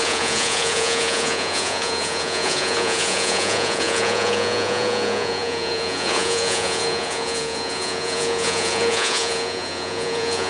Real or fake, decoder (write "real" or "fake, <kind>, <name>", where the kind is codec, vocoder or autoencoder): fake, vocoder, Vocos